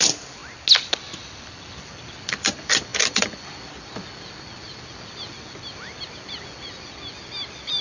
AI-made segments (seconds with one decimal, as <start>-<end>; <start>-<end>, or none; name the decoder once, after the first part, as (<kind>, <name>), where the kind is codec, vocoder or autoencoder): 0.0-0.4 (vocoder, BigVGAN v2); 1.2-7.8